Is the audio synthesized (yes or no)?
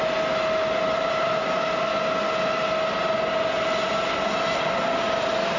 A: no